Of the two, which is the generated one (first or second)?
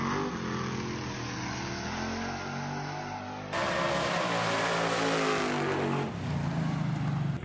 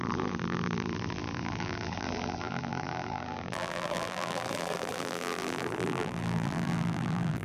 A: second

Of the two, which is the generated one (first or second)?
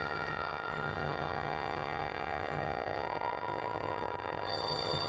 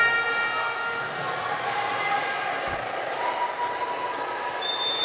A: first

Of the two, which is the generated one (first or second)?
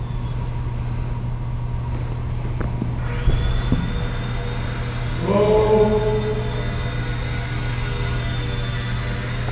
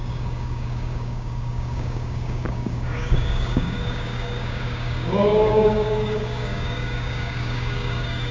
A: second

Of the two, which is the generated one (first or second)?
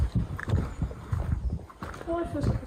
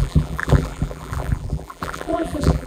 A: second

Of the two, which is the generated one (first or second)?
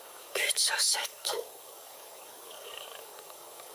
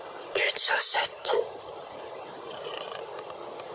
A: first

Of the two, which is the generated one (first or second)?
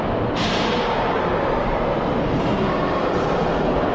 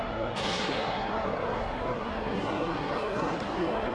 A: second